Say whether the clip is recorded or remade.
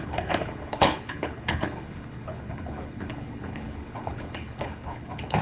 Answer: remade